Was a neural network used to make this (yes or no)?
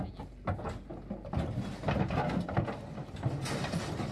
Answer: no